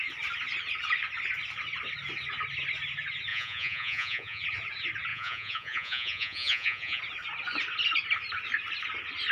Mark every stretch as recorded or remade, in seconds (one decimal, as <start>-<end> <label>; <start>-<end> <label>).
0.0-3.3 recorded; 3.3-4.4 remade; 4.4-5.1 recorded; 5.1-7.0 remade; 7.0-9.3 recorded